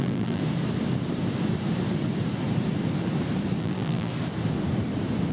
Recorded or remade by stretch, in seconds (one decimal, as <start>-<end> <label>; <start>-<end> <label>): 0.0-0.4 remade; 0.4-3.6 recorded; 3.6-4.1 remade; 4.1-5.3 recorded